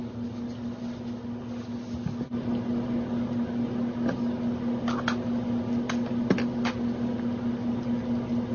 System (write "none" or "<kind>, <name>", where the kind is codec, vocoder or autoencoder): none